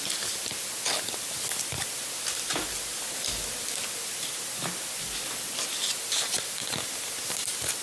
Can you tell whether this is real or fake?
real